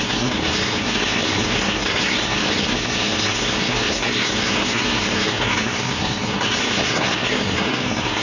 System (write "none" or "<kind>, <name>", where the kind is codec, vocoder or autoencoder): codec, SNAC